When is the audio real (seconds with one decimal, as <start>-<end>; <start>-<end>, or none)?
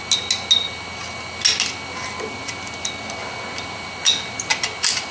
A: 0.0-5.1